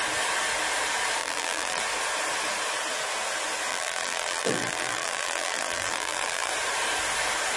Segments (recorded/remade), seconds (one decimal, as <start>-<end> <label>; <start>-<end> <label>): 0.0-1.2 recorded; 1.2-1.8 remade; 1.8-3.7 recorded; 3.7-6.5 remade; 6.5-7.6 recorded